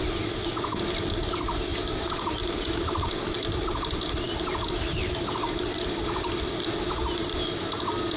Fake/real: real